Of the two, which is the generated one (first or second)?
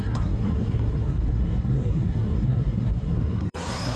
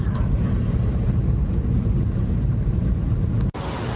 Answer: first